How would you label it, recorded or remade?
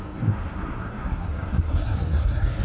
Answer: remade